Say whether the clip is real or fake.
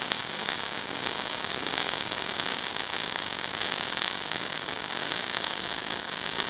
fake